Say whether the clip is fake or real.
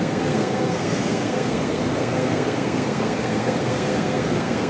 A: fake